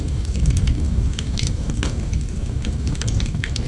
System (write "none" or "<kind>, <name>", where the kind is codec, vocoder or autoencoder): codec, DAC